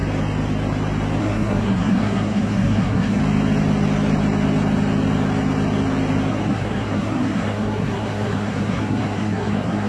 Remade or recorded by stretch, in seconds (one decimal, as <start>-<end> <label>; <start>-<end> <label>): 0.0-1.2 recorded; 1.2-3.2 remade; 3.2-6.3 recorded; 6.3-9.9 remade